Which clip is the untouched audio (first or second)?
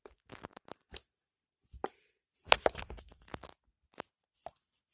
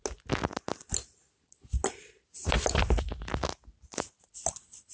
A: second